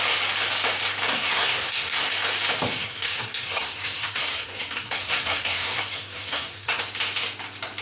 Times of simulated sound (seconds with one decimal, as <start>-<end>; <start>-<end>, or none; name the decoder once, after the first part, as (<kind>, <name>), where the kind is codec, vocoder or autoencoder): 1.1-2.1 (codec, SNAC); 2.8-6.8